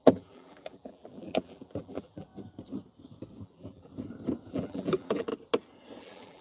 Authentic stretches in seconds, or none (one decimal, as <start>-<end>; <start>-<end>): 2.3-3.4; 3.9-4.5; 5.3-6.0